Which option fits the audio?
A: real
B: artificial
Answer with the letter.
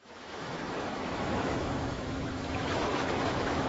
B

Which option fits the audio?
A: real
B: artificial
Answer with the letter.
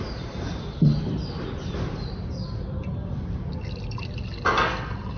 A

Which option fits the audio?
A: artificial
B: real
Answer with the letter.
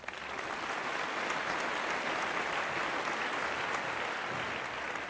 B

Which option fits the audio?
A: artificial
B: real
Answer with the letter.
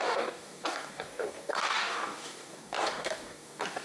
A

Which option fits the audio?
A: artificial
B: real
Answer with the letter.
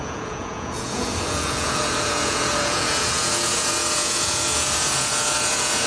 A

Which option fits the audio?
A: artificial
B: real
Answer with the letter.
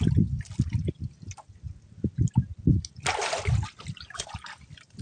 B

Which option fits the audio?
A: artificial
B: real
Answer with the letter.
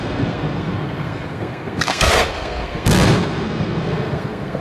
A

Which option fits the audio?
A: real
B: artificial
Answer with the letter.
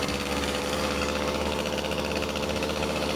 B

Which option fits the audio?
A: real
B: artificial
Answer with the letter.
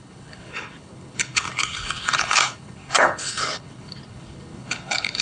B